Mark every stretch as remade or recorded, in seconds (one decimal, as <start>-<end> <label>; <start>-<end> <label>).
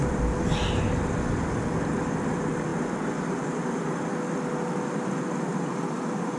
0.0-6.4 recorded